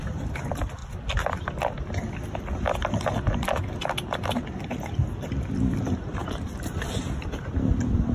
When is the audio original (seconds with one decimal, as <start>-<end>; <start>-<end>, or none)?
0.8-5.7